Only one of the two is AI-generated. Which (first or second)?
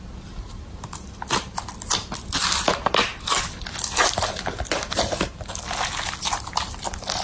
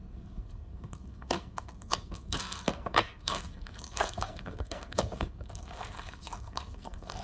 second